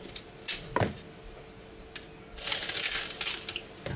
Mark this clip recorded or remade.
recorded